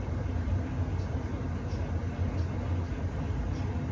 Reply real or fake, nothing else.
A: real